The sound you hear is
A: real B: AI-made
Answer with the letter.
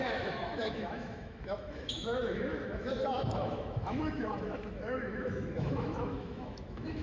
B